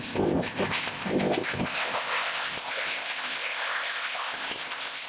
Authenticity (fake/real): fake